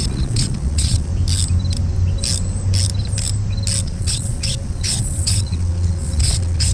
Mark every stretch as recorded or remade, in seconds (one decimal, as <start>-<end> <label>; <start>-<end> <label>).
0.0-1.1 remade; 1.1-3.8 recorded; 3.8-6.7 remade